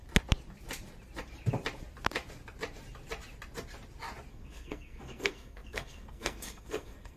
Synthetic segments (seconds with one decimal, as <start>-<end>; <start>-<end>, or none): 4.3-7.2